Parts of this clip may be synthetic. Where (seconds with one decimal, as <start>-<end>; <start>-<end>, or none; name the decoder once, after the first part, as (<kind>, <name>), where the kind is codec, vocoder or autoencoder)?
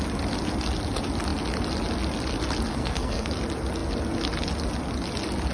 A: 2.7-3.3 (codec, SNAC)